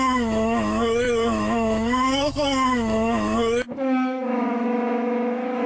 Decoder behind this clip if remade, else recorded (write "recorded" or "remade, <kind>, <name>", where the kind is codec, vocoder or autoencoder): remade, autoencoder, DAC-VAE